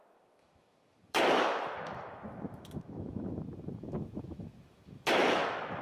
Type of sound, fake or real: fake